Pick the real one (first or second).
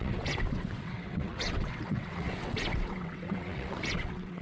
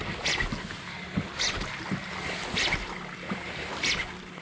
second